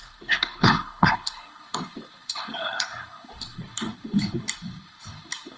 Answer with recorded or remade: remade